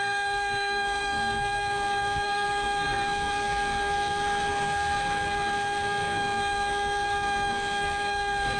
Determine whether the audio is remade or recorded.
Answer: remade